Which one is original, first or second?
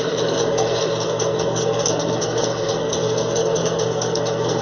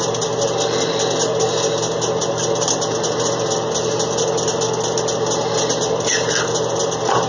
second